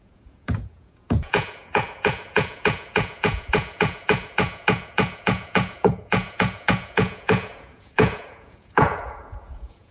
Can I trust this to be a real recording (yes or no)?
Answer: no